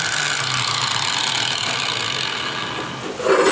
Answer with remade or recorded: recorded